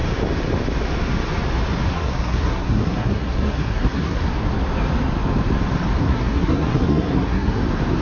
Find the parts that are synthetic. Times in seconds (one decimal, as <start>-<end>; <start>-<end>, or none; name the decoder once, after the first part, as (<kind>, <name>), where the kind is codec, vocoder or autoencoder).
1.9-4.2 (codec, SNAC); 6.0-7.6